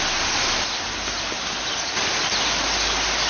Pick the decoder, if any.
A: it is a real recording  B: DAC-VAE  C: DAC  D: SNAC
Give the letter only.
A